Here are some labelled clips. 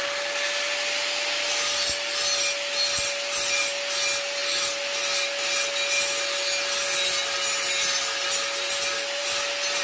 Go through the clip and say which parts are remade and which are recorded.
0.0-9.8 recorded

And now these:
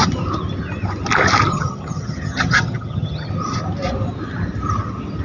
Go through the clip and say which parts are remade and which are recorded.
0.0-1.5 recorded; 1.5-3.3 remade; 3.3-5.2 recorded

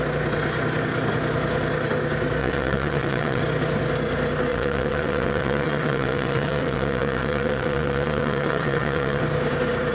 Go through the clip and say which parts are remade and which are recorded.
0.0-2.4 recorded; 2.4-3.4 remade; 3.4-4.5 recorded; 4.5-9.2 remade; 9.2-9.9 recorded